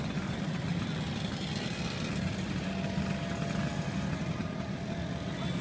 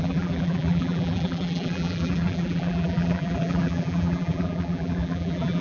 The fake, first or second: second